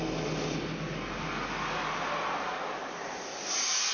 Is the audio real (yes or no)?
yes